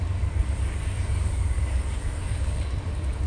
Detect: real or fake fake